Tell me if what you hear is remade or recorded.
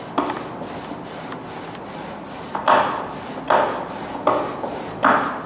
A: recorded